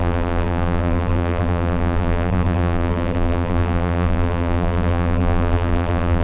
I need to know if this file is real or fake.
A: fake